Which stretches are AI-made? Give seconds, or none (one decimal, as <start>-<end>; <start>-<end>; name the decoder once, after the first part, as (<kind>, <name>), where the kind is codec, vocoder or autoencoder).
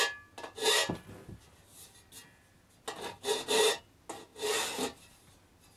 none